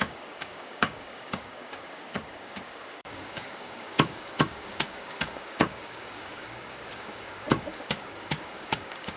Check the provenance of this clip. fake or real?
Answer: fake